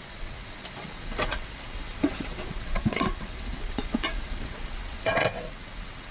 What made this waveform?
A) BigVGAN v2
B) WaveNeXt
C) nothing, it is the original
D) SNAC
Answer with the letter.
B